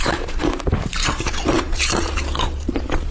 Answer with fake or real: fake